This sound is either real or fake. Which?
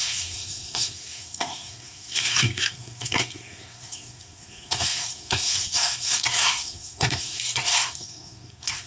fake